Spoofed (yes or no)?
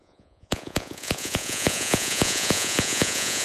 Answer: yes